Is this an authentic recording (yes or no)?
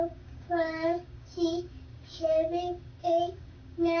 no